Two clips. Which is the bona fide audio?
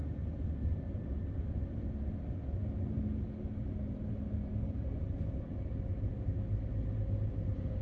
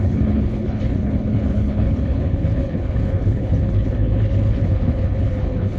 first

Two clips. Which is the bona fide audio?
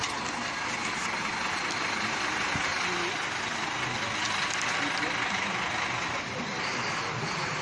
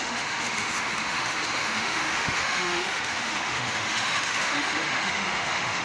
first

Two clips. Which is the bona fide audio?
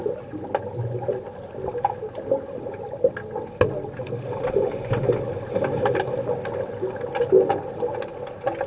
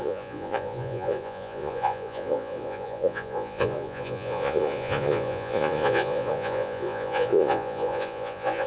first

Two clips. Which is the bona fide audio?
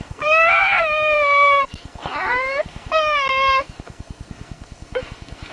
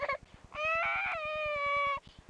second